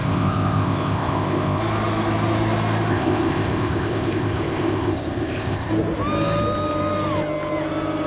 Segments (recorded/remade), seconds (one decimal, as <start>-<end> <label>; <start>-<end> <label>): 0.0-1.6 remade; 1.6-2.9 recorded; 2.9-5.7 remade; 5.7-8.1 recorded